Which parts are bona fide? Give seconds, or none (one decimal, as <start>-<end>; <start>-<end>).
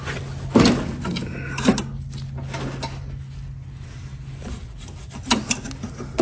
0.0-6.2